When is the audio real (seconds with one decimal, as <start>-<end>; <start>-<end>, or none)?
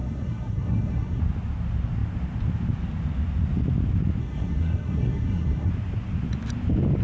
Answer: 1.2-4.2; 5.7-7.0